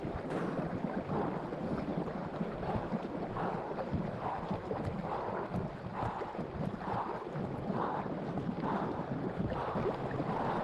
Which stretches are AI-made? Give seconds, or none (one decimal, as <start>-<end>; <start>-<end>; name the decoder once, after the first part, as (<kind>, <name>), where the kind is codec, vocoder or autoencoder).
none